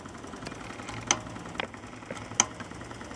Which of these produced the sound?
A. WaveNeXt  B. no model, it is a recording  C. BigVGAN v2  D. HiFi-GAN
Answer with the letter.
B